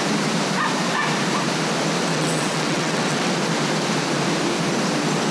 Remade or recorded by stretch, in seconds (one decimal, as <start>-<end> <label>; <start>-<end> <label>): 0.0-2.1 recorded; 2.1-3.3 remade; 3.3-5.3 recorded